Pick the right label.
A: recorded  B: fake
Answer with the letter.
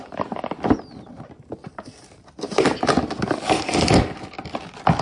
A